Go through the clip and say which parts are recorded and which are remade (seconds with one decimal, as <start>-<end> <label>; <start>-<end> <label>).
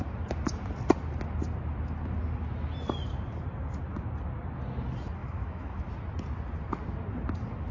0.0-5.2 recorded; 5.2-5.9 remade; 5.9-7.7 recorded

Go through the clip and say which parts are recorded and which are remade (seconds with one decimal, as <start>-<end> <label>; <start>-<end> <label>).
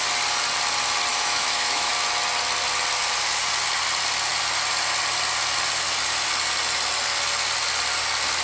0.0-1.1 recorded; 1.1-1.9 remade; 1.9-8.4 recorded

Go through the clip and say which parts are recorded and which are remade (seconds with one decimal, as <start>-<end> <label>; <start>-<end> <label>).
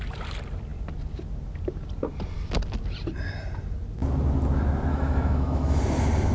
0.0-4.9 recorded; 4.9-5.8 remade; 5.8-6.3 recorded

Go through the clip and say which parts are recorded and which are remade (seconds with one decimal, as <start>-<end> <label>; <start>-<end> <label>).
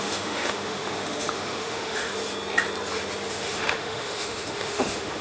0.0-2.1 remade; 2.1-3.3 recorded; 3.3-5.2 remade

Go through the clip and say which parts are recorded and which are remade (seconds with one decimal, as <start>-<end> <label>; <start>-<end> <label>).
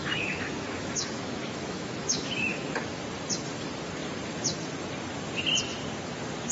0.0-3.0 remade; 3.0-6.5 recorded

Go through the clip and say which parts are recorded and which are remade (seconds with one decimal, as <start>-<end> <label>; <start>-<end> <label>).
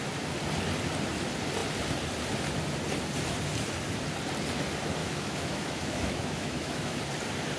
0.0-5.0 recorded; 5.0-7.0 remade; 7.0-7.6 recorded